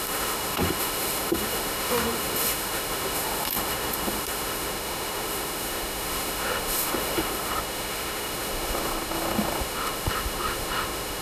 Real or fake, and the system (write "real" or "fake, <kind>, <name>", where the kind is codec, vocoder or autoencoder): fake, autoencoder, DAC-VAE